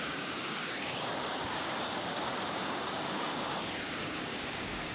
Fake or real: fake